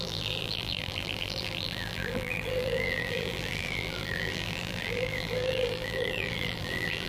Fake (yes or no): yes